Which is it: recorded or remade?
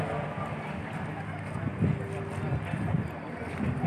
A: recorded